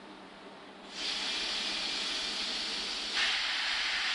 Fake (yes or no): no